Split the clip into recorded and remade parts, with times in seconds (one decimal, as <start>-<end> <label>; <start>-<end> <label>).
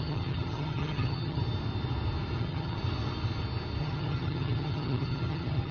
0.0-1.4 remade; 1.4-2.4 recorded; 2.4-2.8 remade; 2.8-3.8 recorded; 3.8-5.7 remade